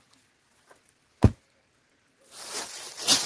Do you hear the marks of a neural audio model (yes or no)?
no